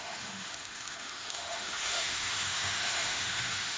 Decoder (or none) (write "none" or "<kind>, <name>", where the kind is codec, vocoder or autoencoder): autoencoder, DAC-VAE